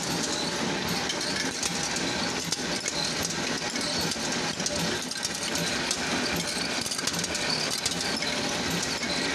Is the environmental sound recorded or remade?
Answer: recorded